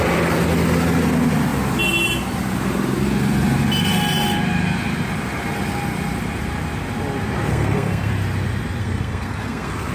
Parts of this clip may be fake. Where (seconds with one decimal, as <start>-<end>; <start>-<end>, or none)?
7.5-8.1; 8.8-9.9